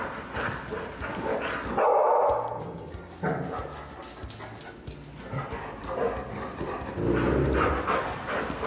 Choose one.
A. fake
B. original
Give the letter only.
B